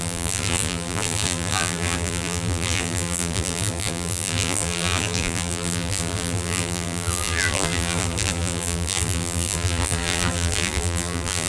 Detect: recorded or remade remade